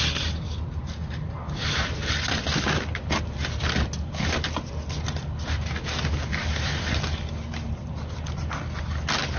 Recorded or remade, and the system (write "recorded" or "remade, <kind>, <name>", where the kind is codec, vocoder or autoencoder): recorded